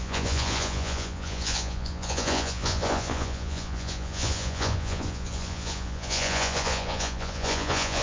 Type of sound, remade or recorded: remade